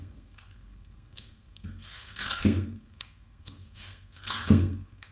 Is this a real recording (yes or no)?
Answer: no